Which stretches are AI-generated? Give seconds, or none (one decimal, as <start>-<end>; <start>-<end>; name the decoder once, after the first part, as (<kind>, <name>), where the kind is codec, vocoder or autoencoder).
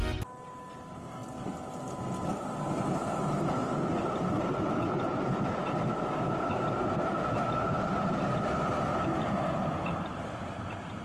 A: none